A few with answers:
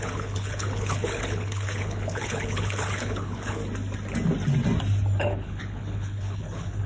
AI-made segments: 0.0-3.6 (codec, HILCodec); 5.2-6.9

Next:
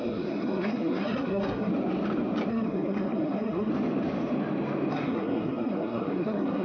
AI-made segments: 0.0-1.7 (codec, SNAC); 2.5-3.7; 4.9-6.6

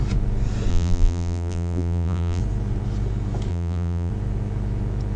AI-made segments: 0.7-2.4 (vocoder, BigVGAN v2); 3.5-4.1

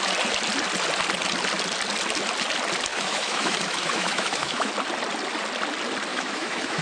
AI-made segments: 2.9-4.7 (autoencoder, DAC-VAE); 6.1-6.8